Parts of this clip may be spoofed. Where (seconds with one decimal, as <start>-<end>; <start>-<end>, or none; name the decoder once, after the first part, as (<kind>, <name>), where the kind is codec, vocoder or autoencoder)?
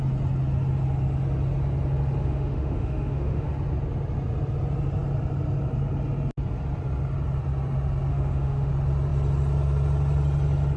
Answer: 2.2-3.5 (autoencoder, DAC-VAE); 8.1-8.7